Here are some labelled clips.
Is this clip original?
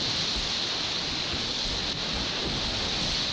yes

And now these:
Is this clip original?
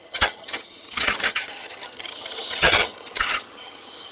no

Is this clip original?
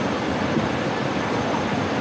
yes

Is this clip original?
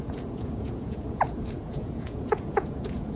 no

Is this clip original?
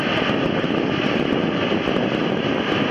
yes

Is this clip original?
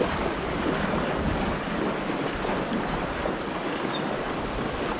yes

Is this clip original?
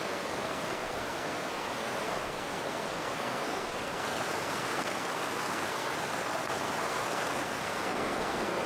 no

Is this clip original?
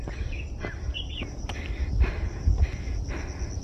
yes